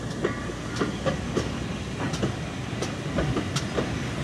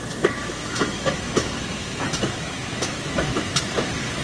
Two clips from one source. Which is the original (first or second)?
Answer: first